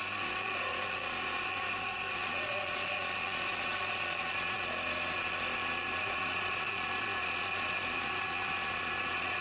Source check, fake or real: fake